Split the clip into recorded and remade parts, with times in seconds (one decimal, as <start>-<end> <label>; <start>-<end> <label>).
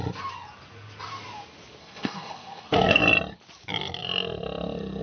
0.0-1.8 recorded; 1.8-3.0 remade; 3.0-5.0 recorded